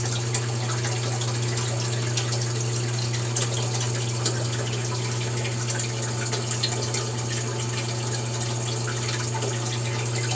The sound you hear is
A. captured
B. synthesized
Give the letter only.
A